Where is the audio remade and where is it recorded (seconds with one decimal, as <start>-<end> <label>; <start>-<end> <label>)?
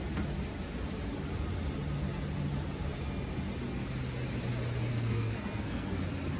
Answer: 0.0-4.9 recorded; 4.9-6.0 remade; 6.0-6.4 recorded